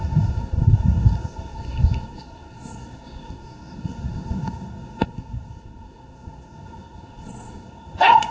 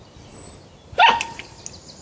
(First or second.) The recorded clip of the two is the second